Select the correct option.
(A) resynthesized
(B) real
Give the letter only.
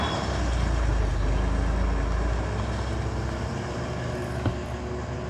B